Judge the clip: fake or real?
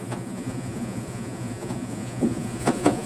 fake